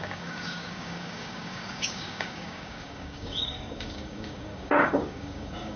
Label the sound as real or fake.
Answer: fake